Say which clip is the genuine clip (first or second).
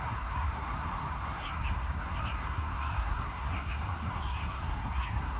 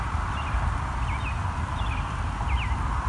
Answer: second